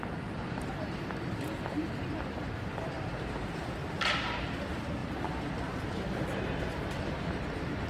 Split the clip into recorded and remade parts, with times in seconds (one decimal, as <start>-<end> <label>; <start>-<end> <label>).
0.0-3.8 remade; 3.8-4.3 recorded; 4.3-7.9 remade